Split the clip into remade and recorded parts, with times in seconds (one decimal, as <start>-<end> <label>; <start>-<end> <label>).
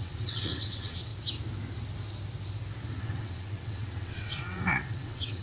0.0-1.1 remade; 1.1-3.0 recorded; 3.0-5.4 remade